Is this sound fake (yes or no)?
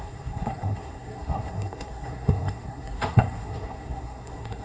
yes